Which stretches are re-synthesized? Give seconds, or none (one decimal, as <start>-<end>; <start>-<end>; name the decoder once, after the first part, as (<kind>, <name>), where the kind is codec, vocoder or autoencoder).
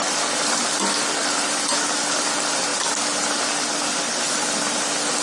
none